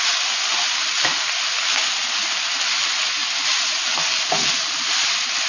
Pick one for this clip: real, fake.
real